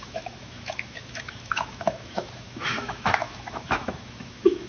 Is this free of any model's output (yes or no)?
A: no